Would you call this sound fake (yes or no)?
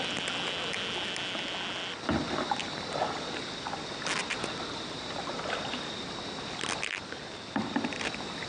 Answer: no